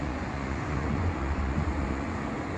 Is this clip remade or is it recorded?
remade